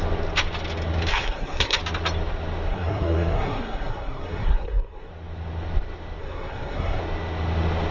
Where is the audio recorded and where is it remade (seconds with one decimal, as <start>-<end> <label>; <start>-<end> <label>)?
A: 0.0-1.1 recorded; 1.1-1.8 remade; 1.8-2.7 recorded; 2.7-5.1 remade; 5.1-6.2 recorded; 6.2-7.0 remade; 7.0-7.9 recorded